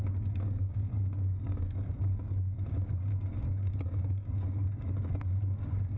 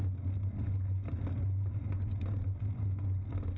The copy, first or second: first